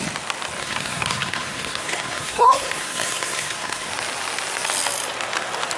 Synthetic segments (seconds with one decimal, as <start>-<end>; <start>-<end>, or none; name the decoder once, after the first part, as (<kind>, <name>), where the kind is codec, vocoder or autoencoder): 0.6-3.9 (codec, SNAC)